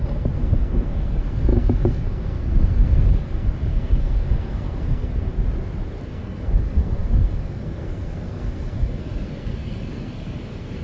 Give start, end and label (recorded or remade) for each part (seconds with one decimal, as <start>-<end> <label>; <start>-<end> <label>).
0.0-5.3 remade; 5.3-6.0 recorded; 6.0-10.8 remade